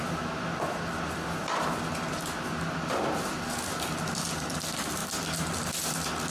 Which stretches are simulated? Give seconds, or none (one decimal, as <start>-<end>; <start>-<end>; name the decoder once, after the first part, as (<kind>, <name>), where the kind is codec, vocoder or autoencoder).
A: none